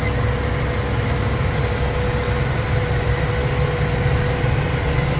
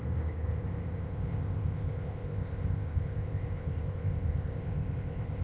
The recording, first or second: first